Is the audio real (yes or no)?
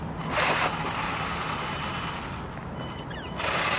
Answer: yes